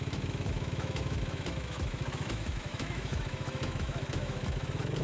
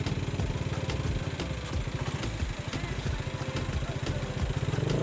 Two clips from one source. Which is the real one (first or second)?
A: second